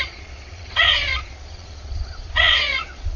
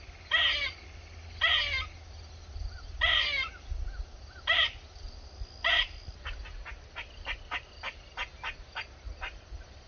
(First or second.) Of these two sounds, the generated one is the first